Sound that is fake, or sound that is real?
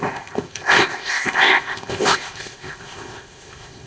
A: fake